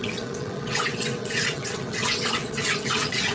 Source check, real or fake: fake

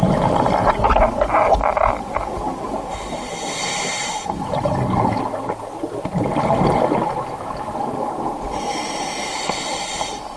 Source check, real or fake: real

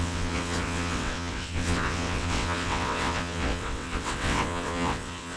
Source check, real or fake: fake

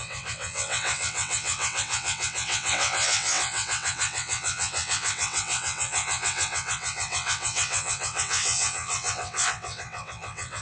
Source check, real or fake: fake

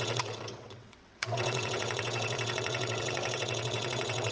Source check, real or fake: fake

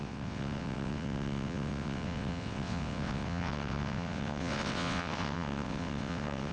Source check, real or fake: fake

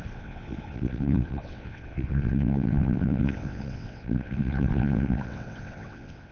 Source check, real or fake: fake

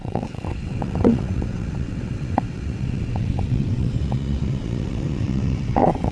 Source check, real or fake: fake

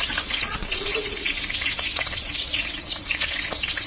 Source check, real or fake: fake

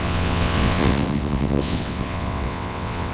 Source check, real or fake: fake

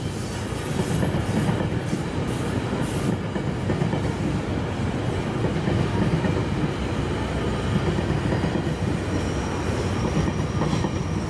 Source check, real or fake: real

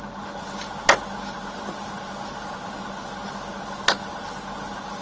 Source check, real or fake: real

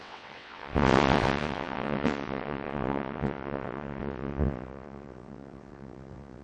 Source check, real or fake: fake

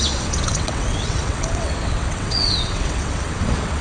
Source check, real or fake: fake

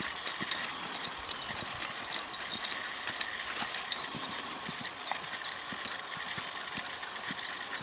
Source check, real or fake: real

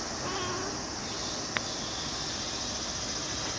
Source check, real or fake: real